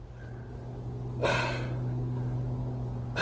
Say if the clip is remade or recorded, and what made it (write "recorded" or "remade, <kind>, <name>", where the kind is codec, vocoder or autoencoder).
recorded